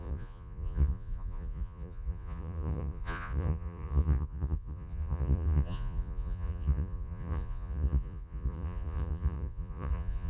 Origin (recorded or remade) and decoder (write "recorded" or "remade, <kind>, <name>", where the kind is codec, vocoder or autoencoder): remade, vocoder, Vocos